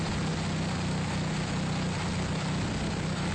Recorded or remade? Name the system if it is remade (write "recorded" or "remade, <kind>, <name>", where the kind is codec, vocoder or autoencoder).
recorded